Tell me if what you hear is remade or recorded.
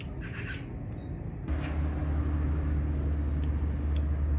recorded